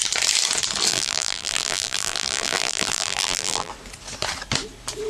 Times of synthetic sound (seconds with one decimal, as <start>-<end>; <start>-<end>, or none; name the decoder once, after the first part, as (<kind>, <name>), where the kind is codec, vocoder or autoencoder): 0.9-3.7 (vocoder, BigVGAN v2)